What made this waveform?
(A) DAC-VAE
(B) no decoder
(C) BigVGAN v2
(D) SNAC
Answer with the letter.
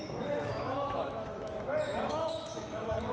A